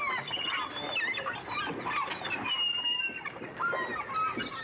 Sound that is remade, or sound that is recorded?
recorded